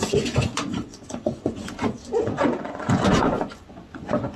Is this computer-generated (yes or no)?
yes